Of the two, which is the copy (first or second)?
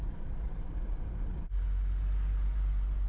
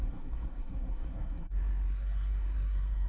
second